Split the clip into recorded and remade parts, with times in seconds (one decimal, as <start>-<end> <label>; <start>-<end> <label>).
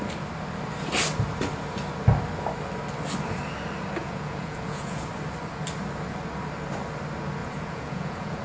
0.0-4.0 recorded; 4.0-5.1 remade; 5.1-7.4 recorded; 7.4-8.4 remade